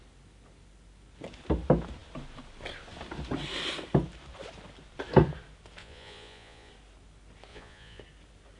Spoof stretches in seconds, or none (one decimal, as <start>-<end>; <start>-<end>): 5.8-6.7; 7.5-8.0